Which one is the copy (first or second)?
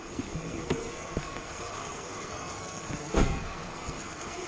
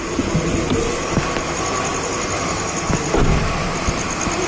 first